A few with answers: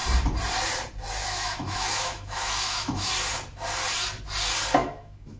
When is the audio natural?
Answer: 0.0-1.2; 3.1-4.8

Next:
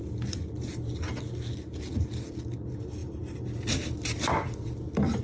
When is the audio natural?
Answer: 0.0-3.0

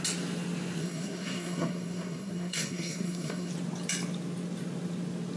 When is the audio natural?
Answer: 0.0-0.8; 3.5-5.4